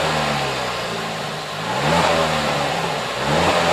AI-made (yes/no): no